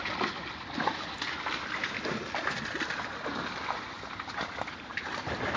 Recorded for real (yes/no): no